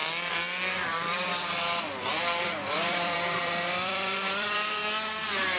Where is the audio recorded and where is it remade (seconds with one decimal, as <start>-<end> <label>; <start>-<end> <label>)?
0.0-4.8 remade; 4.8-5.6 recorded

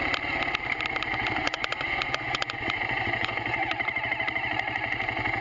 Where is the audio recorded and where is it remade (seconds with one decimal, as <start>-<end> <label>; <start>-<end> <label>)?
0.0-1.4 recorded; 1.4-3.7 remade; 3.7-5.4 recorded

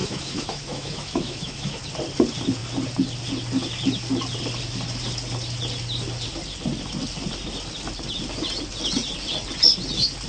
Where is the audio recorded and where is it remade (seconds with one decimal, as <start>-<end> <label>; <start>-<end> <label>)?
0.0-1.8 remade; 1.8-10.3 recorded

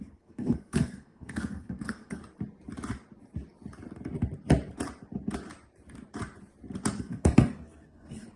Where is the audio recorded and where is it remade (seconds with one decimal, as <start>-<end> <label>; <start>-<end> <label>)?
0.0-2.2 remade; 2.2-7.0 recorded; 7.0-8.4 remade

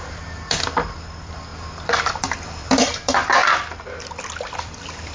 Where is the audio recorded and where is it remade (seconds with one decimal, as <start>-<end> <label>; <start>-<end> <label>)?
0.0-3.2 remade; 3.2-4.6 recorded; 4.6-5.1 remade